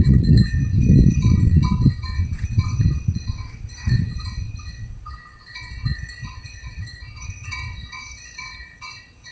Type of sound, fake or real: fake